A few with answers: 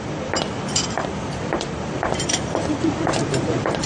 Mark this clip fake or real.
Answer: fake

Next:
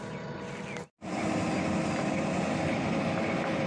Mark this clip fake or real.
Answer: real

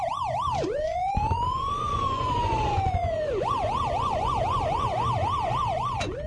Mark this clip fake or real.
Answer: fake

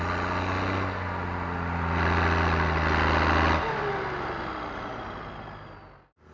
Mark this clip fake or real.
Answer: real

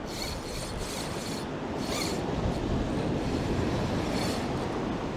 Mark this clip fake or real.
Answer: real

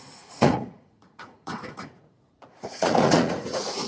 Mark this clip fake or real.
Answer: fake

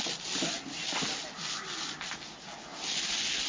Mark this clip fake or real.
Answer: real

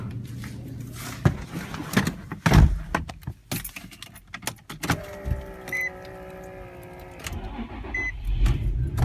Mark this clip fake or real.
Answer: real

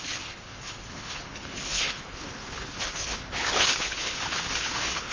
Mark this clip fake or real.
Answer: fake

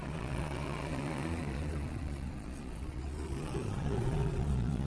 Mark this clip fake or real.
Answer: fake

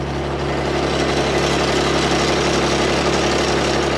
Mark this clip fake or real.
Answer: real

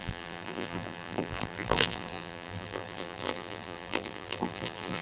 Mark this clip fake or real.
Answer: fake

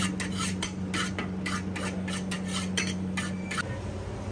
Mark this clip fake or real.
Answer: real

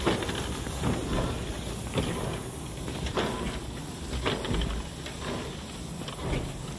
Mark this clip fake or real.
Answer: real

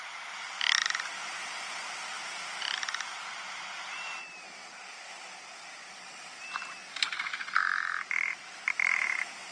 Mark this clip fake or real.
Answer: real